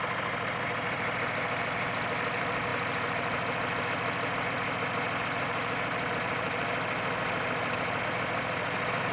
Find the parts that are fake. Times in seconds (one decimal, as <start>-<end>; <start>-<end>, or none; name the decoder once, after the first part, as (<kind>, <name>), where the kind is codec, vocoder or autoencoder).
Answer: none